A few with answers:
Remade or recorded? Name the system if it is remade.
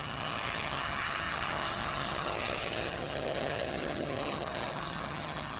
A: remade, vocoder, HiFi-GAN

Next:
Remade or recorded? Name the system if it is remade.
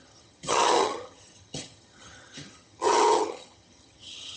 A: remade, vocoder, HiFi-GAN